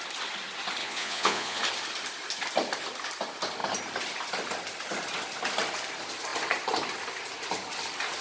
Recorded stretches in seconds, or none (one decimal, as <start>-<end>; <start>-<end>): 0.0-0.8; 1.6-8.2